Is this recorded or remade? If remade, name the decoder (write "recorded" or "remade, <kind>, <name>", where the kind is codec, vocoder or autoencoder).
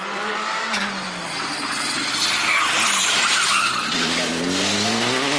recorded